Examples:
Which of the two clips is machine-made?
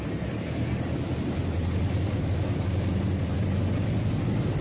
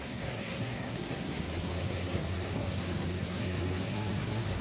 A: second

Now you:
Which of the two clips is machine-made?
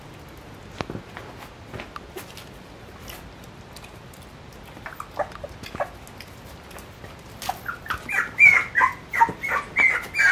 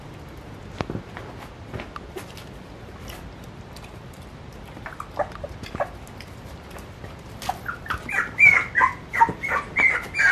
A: second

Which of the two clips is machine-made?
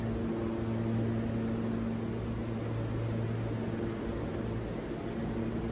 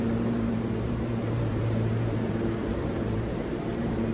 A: second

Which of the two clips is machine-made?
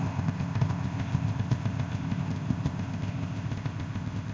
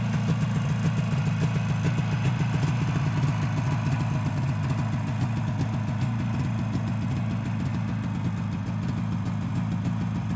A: first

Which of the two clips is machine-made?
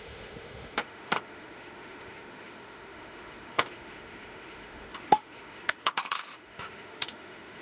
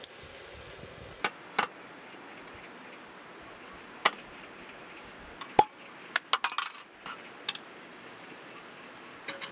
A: first